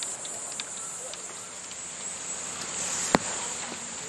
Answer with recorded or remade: recorded